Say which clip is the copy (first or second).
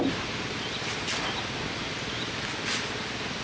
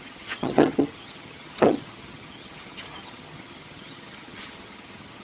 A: second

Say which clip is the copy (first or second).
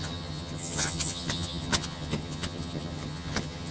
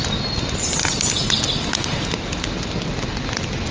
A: first